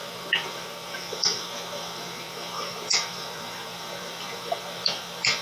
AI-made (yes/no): yes